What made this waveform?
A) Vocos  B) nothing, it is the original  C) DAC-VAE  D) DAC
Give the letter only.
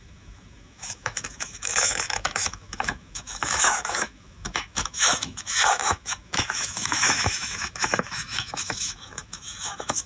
C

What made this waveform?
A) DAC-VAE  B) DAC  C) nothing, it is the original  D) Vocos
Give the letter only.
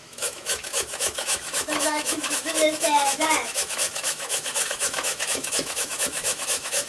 A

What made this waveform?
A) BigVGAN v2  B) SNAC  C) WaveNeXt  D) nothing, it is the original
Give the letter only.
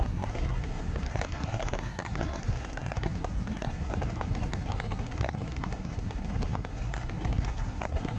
B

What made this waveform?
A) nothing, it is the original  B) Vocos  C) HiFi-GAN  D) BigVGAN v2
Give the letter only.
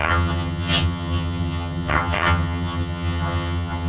C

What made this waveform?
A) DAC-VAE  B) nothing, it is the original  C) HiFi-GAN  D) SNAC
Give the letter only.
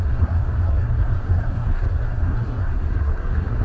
D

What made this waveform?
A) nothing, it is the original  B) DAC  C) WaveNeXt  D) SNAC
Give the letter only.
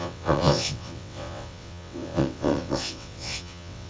C